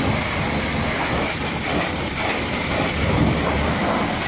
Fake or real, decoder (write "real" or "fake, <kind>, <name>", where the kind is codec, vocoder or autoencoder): real